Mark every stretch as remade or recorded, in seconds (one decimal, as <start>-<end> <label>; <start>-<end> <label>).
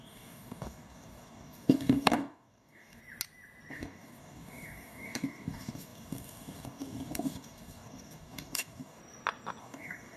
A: 0.0-3.0 remade; 3.0-3.7 recorded; 3.7-9.0 remade; 9.0-9.6 recorded; 9.6-10.2 remade